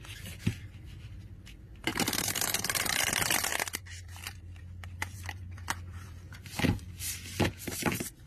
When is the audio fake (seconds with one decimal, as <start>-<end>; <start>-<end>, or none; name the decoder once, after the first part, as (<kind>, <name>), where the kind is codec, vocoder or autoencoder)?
0.0-8.3 (vocoder, BigVGAN v2)